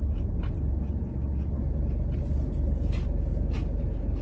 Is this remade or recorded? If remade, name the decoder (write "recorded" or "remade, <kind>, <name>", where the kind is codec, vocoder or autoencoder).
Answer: recorded